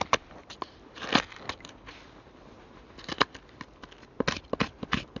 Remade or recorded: recorded